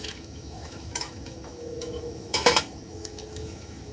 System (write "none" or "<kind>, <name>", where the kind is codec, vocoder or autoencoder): autoencoder, DAC-VAE